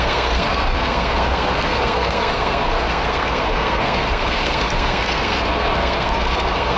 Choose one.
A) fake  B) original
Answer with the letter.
A